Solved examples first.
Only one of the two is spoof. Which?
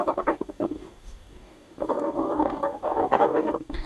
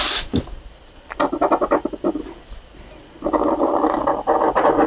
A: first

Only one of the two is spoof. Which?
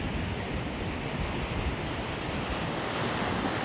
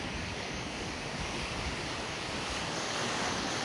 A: second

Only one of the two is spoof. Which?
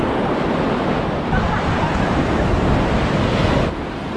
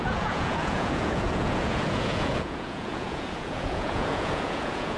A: second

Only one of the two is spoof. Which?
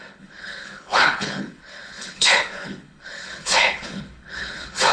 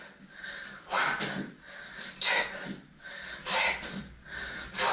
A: first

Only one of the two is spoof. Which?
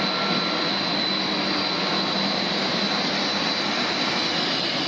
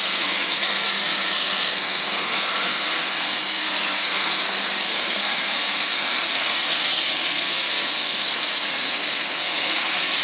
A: second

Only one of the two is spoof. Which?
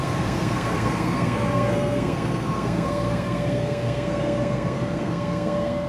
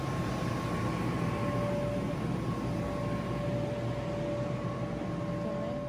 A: first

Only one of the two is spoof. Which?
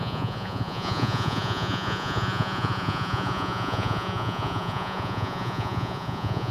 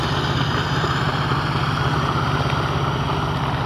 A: first